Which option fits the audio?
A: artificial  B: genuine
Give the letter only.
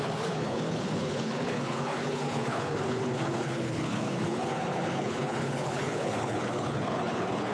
A